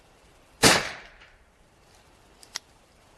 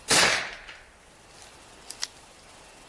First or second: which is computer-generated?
first